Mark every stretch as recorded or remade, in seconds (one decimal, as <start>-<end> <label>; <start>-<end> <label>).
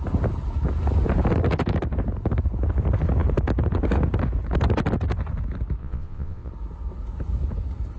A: 0.0-5.8 recorded; 5.8-6.5 remade; 6.5-8.0 recorded